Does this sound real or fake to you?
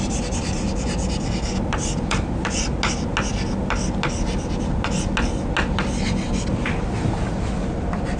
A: real